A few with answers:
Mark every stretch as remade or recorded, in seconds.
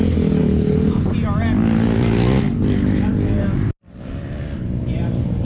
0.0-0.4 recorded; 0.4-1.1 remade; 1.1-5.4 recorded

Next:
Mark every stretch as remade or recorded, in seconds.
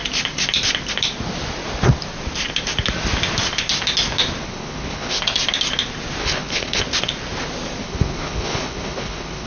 0.0-4.4 recorded; 4.4-5.2 remade; 5.2-6.2 recorded; 6.2-6.8 remade; 6.8-7.8 recorded; 7.8-9.5 remade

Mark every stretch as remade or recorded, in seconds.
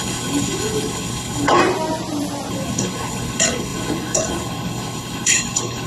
0.0-1.6 remade; 1.6-2.5 recorded; 2.5-5.9 remade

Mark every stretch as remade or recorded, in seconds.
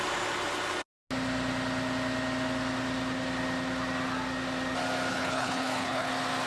0.0-5.1 recorded; 5.1-6.1 remade; 6.1-6.5 recorded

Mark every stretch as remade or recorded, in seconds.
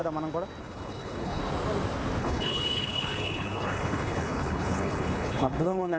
0.0-0.6 recorded; 0.6-1.4 remade; 1.4-2.2 recorded; 2.2-6.0 remade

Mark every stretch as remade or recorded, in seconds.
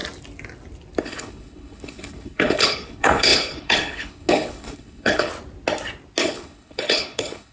0.0-1.0 recorded; 1.0-5.3 remade; 5.3-6.2 recorded; 6.2-7.5 remade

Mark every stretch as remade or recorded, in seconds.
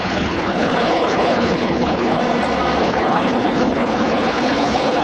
0.0-2.2 remade; 2.2-2.8 recorded; 2.8-5.0 remade